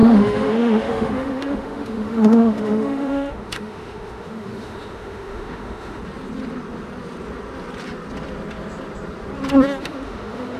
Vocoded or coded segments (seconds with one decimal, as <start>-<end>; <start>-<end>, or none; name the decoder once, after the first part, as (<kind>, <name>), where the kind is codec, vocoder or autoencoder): 0.0-6.0 (autoencoder, DAC-VAE); 9.8-10.6